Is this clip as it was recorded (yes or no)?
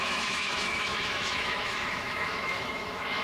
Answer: no